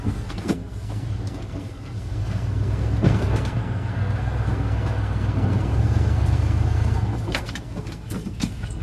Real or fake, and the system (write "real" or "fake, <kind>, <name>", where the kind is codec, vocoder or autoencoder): fake, codec, SNAC